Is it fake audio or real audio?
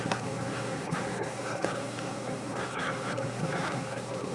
fake